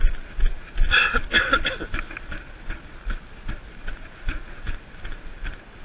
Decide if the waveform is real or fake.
real